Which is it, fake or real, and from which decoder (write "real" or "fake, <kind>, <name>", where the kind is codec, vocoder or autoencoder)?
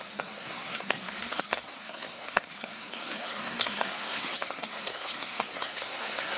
fake, codec, SNAC